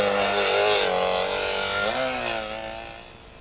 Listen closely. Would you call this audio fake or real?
real